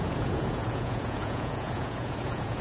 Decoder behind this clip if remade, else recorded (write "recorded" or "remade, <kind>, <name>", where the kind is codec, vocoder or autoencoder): remade, vocoder, Vocos